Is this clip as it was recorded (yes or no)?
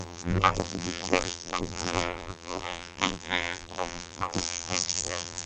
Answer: no